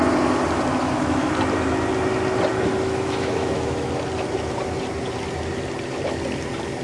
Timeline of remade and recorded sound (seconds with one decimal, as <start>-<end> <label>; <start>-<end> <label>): 0.0-0.8 recorded; 0.8-1.3 remade; 1.3-2.5 recorded; 2.5-3.9 remade; 3.9-6.8 recorded

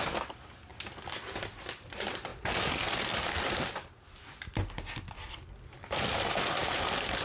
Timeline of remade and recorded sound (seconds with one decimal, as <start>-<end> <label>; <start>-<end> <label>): 0.0-0.7 remade; 0.7-1.6 recorded; 1.6-7.2 remade

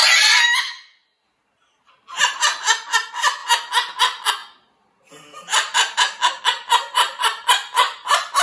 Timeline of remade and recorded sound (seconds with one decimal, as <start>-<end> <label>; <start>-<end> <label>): 0.0-8.4 recorded